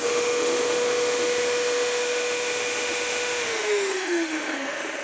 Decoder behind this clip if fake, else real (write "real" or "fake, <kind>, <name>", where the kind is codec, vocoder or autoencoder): fake, autoencoder, DAC-VAE